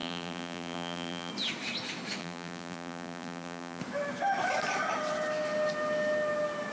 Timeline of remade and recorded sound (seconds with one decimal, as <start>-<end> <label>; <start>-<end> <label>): 0.0-1.3 remade; 1.3-2.2 recorded; 2.2-3.8 remade; 3.8-6.7 recorded